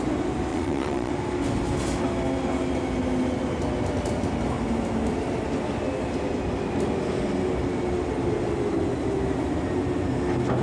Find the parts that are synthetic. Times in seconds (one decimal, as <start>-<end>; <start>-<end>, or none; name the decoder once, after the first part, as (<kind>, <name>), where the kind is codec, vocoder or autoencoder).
0.5-1.1 (vocoder, Vocos)